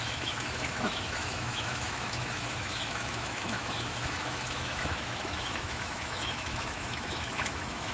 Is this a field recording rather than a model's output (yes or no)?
no